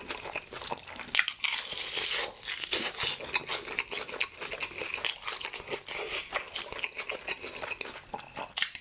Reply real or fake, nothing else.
real